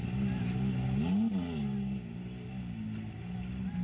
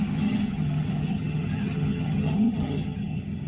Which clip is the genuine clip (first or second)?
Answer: first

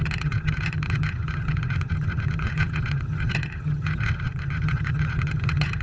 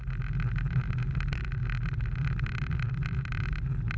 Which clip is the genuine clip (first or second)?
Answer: second